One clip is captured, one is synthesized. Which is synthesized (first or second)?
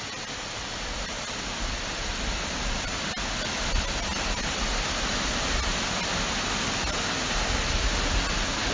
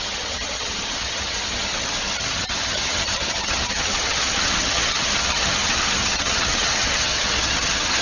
second